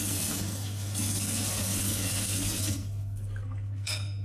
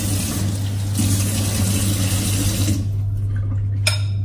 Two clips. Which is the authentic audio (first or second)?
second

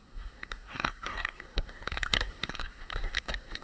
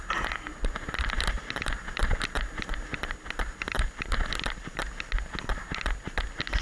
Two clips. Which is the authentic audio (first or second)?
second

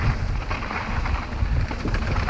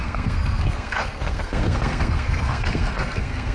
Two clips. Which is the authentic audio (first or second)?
first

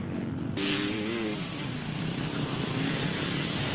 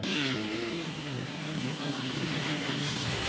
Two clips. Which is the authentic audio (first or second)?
first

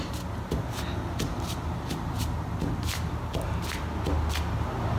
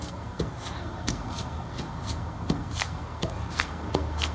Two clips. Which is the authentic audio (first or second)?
first